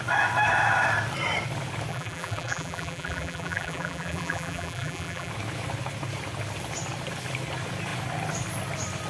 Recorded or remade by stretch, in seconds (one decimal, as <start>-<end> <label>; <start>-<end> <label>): 0.0-1.9 recorded; 1.9-5.3 remade; 5.3-9.1 recorded